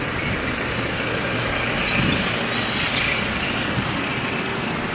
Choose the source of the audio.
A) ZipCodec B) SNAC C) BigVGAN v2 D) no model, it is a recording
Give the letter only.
D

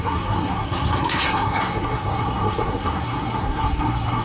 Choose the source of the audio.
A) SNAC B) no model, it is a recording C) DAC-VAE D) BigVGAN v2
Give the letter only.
A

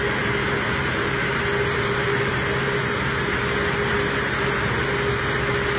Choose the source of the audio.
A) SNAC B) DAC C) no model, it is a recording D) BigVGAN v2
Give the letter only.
C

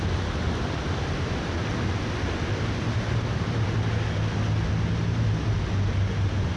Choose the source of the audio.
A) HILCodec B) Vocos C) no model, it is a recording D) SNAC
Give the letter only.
C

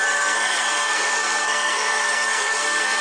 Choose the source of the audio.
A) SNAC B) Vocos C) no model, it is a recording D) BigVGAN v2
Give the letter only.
A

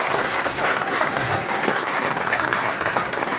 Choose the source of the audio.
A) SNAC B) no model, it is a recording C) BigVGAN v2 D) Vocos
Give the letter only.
A